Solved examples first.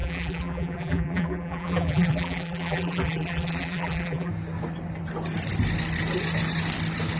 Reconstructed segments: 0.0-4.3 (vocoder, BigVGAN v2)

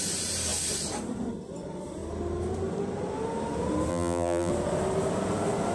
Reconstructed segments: 3.9-4.5 (vocoder, BigVGAN v2)